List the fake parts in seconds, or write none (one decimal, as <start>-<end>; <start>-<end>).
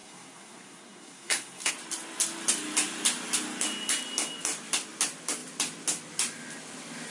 0.0-1.7